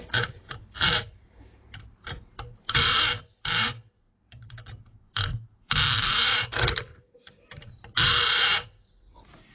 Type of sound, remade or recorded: remade